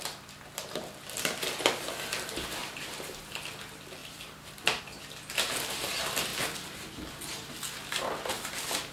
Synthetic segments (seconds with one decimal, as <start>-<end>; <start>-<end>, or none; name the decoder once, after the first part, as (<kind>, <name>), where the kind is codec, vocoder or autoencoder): 2.6-3.3 (vocoder, BigVGAN v2); 4.0-4.8